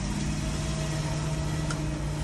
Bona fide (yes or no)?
yes